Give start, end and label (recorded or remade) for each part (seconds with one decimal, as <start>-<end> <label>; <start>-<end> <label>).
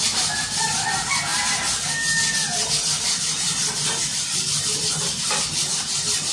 0.0-6.3 recorded